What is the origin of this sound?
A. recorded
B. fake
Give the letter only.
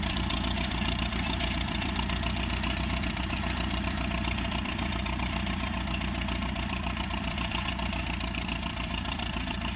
B